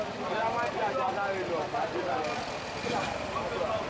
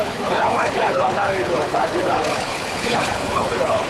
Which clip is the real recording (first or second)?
first